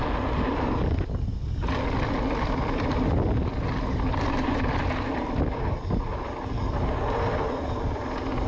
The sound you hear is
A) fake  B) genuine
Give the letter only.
B